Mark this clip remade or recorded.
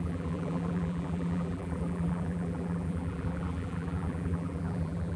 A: remade